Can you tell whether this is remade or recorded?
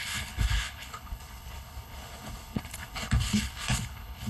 remade